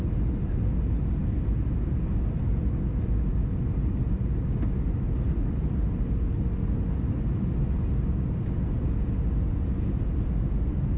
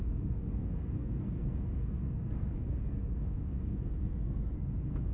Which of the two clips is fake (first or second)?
second